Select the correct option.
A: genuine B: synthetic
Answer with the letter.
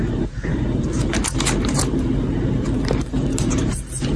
B